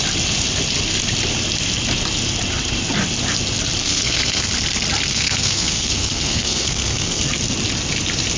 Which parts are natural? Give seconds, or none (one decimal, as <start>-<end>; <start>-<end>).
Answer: 0.0-3.8; 4.5-5.1; 7.2-8.4